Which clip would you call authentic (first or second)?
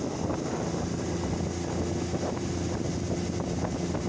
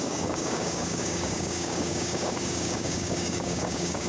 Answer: first